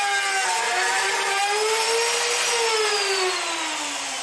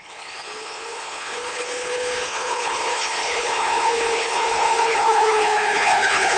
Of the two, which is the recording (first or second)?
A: first